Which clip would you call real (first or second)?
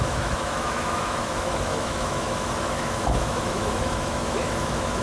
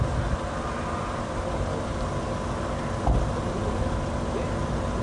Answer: second